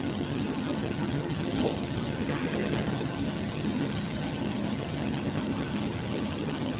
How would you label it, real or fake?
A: fake